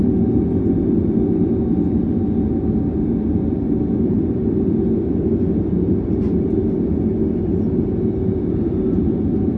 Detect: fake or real real